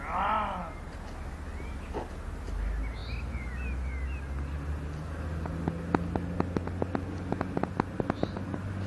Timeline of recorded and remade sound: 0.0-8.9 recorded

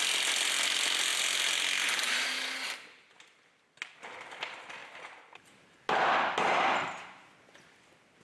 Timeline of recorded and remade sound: 0.0-8.2 recorded

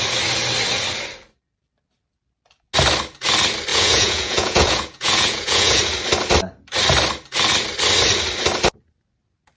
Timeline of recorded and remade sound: 0.0-3.7 recorded; 3.7-5.8 remade; 5.8-9.6 recorded

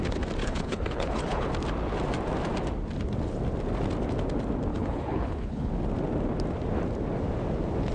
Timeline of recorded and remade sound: 0.0-0.4 recorded; 0.4-1.5 remade; 1.5-4.7 recorded; 4.7-5.7 remade; 5.7-7.9 recorded

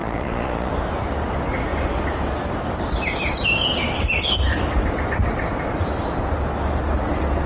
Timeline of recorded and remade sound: 0.0-0.7 remade; 0.7-7.5 recorded

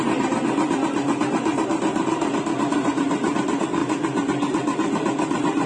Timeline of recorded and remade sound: 0.0-5.7 recorded

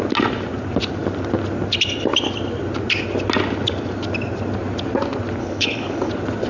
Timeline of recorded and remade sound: 0.0-5.4 recorded; 5.4-6.1 remade; 6.1-6.5 recorded

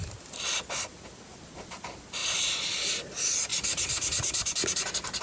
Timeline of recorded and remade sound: 0.0-1.3 recorded; 1.3-1.8 remade; 1.8-5.2 recorded